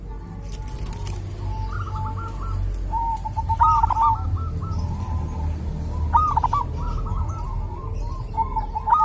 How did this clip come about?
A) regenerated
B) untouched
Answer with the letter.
B